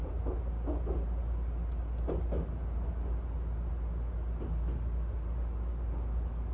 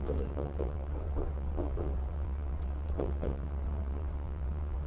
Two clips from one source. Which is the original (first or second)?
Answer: first